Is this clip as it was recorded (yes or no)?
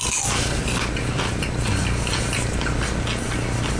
yes